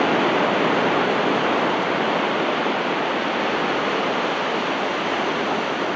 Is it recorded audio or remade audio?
recorded